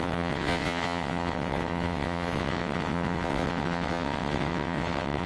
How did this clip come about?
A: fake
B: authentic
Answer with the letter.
A